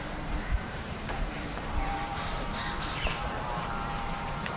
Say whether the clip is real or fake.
fake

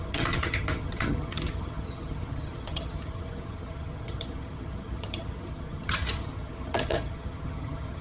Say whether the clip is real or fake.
fake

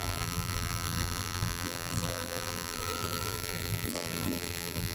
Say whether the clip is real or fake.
fake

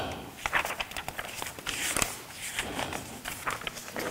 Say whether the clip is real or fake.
real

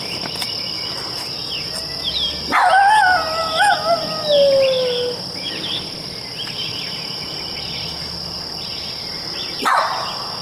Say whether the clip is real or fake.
real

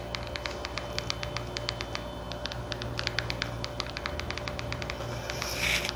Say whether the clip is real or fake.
real